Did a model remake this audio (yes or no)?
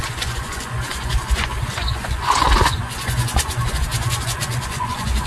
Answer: yes